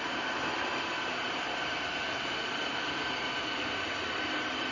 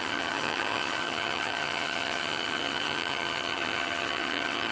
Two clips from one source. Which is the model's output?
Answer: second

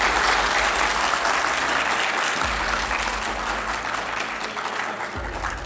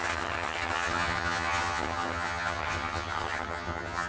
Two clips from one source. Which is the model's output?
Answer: second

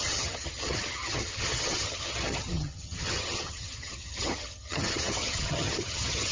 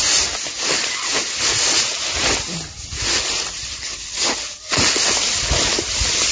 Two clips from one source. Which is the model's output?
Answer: first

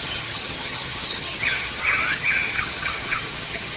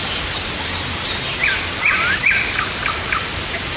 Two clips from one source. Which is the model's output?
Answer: first